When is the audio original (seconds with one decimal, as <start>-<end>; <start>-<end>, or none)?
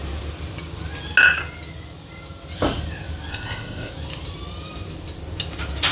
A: 0.0-3.3; 3.9-5.9